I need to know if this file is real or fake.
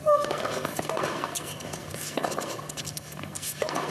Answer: fake